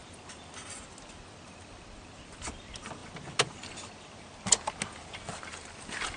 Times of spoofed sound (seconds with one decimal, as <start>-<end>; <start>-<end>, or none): none